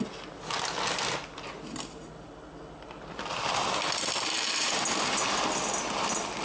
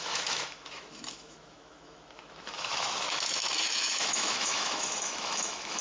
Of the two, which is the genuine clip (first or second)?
first